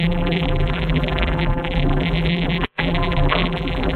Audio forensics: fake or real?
fake